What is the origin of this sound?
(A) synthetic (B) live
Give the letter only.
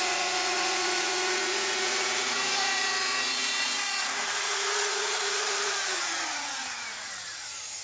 A